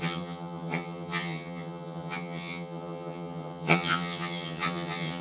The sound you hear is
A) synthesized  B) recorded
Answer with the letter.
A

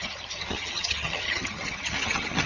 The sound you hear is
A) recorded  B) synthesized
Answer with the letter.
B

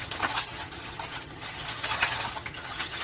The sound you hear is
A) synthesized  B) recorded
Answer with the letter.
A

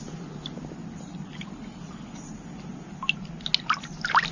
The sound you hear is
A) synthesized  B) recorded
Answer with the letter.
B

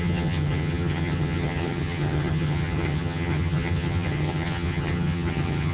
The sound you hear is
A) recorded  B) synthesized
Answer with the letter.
B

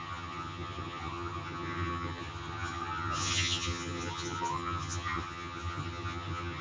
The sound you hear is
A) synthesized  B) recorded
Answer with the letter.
A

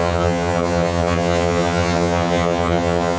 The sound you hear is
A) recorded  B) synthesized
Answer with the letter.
B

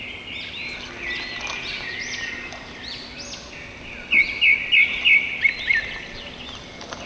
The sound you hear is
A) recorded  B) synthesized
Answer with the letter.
A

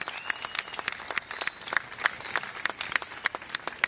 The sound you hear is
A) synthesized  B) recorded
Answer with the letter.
B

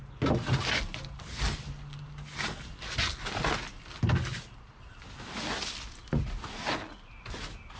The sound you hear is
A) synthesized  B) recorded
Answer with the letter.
B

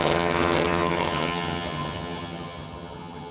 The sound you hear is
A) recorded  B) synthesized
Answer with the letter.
B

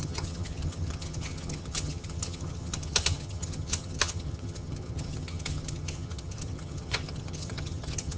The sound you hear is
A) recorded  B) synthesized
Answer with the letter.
B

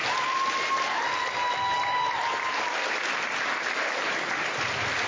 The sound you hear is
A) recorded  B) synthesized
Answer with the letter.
A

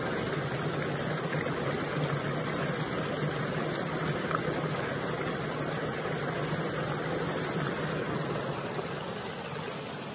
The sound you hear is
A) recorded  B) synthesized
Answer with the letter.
A